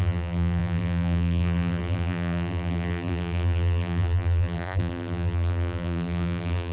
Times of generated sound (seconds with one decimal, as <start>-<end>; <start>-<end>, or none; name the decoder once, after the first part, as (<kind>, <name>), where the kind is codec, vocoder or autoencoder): 0.0-6.7 (vocoder, BigVGAN v2)